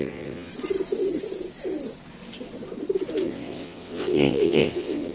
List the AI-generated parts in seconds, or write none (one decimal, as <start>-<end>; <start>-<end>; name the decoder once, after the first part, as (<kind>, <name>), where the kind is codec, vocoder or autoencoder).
0.0-0.5 (vocoder, WaveNeXt); 3.2-5.1